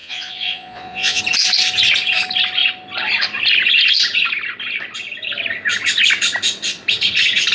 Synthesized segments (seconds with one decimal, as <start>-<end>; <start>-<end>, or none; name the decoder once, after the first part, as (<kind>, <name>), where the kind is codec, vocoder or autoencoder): 0.0-1.2 (vocoder, Vocos)

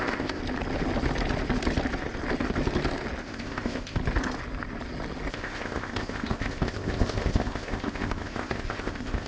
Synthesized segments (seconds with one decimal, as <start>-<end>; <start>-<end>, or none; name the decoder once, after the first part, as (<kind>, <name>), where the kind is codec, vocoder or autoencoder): 0.0-0.4 (codec, ZipCodec); 3.2-4.0; 5.3-9.3

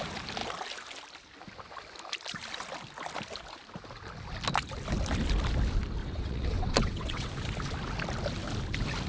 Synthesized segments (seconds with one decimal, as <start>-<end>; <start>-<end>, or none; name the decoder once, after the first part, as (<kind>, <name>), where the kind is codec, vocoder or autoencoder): 6.0-7.3 (vocoder, WaveNeXt)

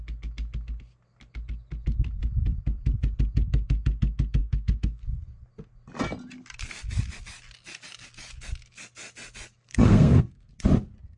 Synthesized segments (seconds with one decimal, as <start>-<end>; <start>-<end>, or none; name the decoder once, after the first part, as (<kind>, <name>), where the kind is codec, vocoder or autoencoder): 4.4-5.0 (codec, SNAC); 9.7-10.5

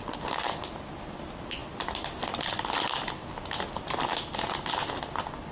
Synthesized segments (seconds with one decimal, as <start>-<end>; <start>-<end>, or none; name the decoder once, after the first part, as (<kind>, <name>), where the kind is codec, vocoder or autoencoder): none